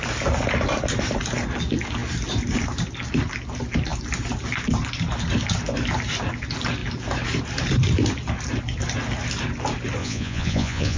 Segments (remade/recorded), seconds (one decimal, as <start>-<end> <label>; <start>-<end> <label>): 0.0-10.0 recorded; 10.0-11.0 remade